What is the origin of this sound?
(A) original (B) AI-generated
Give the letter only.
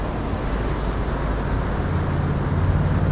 A